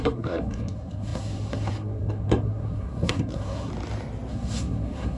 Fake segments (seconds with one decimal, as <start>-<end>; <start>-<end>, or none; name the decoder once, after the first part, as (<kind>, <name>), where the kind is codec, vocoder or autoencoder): 0.0-3.7 (codec, SNAC); 4.3-5.2